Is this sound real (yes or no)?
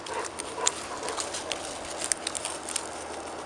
yes